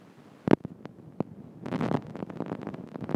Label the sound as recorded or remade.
recorded